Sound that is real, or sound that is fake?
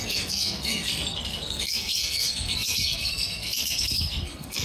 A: fake